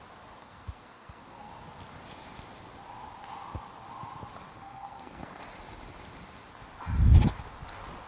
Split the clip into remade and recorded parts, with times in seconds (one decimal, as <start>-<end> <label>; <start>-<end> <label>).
0.0-0.4 recorded; 0.4-1.5 remade; 1.5-4.5 recorded; 4.5-5.4 remade; 5.4-8.1 recorded